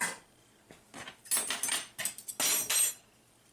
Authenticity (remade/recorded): recorded